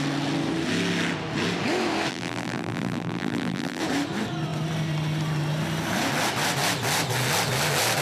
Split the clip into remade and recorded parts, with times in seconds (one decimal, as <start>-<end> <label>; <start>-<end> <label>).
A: 0.0-2.1 recorded; 2.1-3.8 remade; 3.8-8.0 recorded